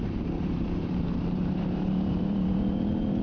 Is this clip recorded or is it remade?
remade